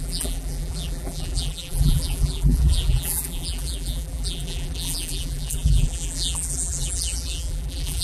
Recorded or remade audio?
remade